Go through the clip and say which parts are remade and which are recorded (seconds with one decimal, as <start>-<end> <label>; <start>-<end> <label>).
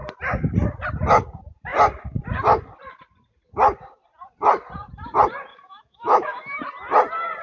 0.0-5.5 recorded; 5.5-6.6 remade; 6.6-7.4 recorded